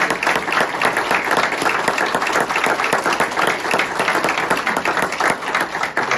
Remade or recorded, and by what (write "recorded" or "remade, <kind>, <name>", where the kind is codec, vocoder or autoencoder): recorded